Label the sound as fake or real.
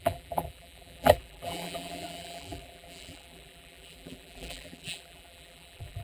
fake